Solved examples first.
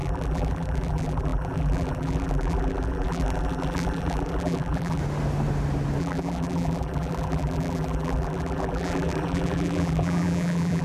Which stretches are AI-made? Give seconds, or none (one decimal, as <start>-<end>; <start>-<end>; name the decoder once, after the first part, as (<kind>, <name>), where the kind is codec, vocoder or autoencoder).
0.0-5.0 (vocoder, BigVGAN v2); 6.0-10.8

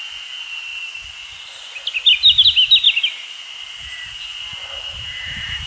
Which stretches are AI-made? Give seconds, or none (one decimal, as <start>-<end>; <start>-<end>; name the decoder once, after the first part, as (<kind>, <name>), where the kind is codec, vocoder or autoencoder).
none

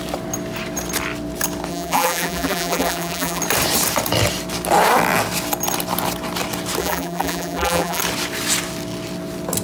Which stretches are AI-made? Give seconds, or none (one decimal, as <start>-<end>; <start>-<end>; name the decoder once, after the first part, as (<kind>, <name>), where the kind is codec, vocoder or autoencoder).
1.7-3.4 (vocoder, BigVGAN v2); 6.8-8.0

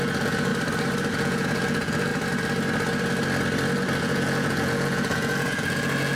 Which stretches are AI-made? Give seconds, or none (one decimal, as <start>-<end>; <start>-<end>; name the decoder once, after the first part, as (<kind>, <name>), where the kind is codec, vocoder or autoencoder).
0.0-0.5 (vocoder, Vocos); 1.1-2.1; 4.0-6.2

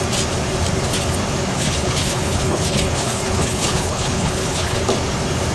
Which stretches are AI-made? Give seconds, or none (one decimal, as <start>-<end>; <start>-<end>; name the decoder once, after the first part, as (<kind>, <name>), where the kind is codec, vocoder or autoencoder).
1.5-4.8 (codec, HILCodec)

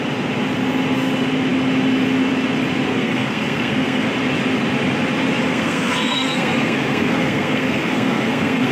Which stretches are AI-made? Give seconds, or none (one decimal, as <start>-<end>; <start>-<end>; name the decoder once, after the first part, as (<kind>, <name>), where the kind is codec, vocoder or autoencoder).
2.9-4.1 (codec, SNAC); 5.5-8.7

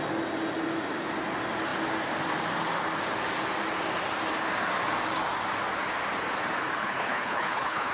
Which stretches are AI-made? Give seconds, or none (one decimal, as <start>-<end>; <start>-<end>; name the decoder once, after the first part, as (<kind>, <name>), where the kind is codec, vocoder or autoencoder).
6.8-7.9 (codec, HILCodec)